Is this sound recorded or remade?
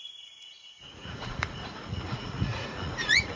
remade